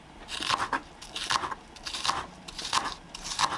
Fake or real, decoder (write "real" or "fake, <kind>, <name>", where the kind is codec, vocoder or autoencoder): real